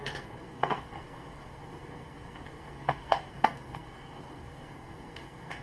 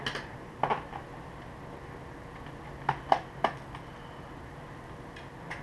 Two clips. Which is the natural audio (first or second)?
second